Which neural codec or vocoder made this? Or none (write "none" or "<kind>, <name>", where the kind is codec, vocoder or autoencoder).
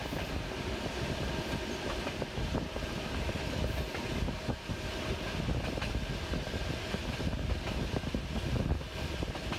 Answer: none